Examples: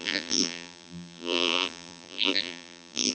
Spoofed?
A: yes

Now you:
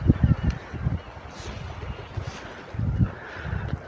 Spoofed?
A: no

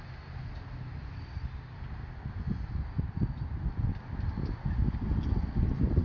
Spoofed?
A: no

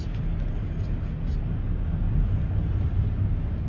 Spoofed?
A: no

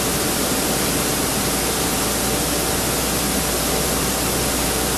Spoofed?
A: no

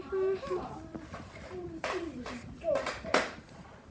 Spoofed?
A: yes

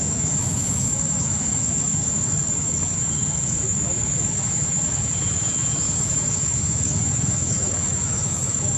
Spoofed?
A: yes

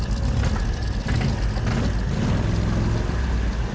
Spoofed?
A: no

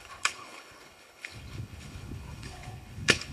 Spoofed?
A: yes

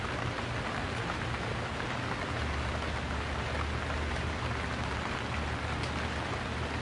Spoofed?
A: no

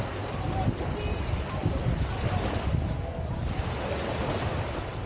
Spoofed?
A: no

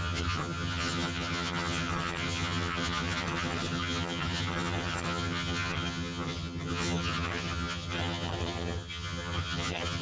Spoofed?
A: yes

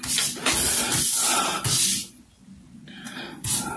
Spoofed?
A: no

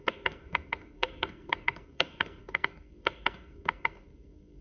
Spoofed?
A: yes